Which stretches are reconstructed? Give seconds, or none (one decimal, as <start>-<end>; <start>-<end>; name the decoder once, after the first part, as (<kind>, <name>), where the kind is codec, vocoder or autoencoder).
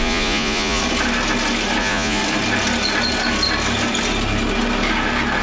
0.0-0.8 (vocoder, Vocos); 1.8-2.2